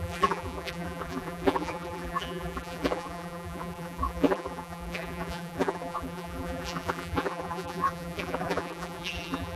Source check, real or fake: fake